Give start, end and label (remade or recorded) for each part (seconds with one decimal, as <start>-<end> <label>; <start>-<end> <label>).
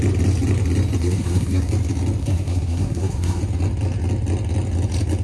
0.0-1.0 recorded; 1.0-1.7 remade; 1.7-2.2 recorded; 2.2-3.4 remade; 3.4-5.2 recorded